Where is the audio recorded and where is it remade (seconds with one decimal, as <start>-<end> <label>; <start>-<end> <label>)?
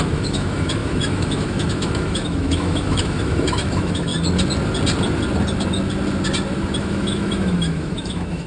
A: 0.0-4.1 remade; 4.1-6.8 recorded; 6.8-8.5 remade